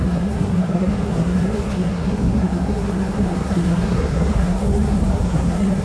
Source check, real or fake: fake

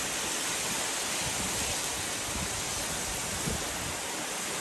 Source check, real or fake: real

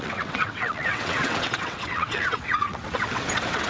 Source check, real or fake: fake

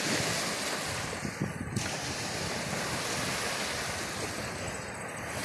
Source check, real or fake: real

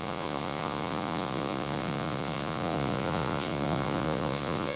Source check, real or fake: fake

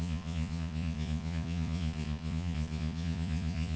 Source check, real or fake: fake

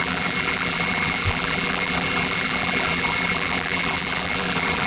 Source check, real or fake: fake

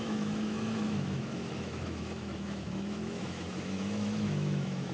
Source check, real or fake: fake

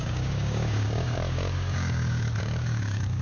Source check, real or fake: fake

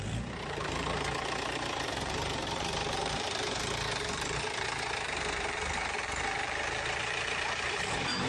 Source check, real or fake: fake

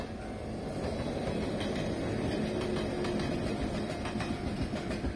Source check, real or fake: real